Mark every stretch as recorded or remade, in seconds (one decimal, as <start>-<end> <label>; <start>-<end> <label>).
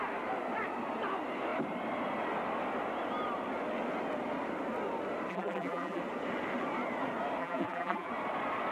0.0-5.3 recorded; 5.3-6.0 remade; 6.0-7.4 recorded; 7.4-8.1 remade; 8.1-8.7 recorded